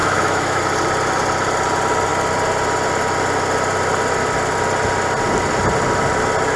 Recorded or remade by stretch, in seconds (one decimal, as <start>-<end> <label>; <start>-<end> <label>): 0.0-0.6 remade; 0.6-6.6 recorded